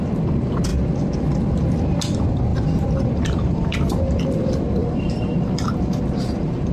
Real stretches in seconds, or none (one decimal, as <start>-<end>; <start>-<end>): 0.0-2.5; 4.2-4.8

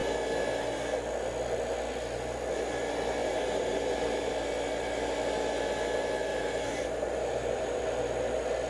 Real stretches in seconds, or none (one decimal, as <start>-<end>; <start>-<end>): 0.0-3.2; 4.3-6.3; 7.8-8.7

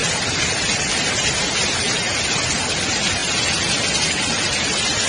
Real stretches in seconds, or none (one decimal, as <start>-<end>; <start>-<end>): 1.3-5.1